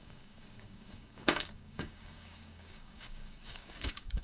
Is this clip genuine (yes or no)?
no